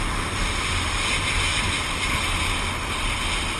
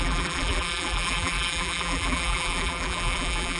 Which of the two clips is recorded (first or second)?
first